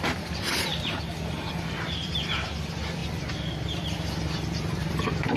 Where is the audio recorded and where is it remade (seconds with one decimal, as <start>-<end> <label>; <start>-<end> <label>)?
0.0-5.4 remade